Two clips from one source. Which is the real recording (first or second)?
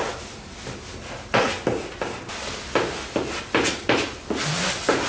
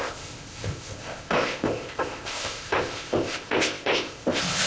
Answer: first